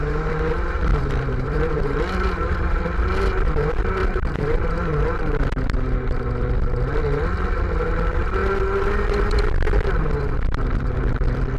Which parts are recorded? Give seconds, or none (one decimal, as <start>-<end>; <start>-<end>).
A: 0.0-0.9; 2.8-4.0; 4.6-11.6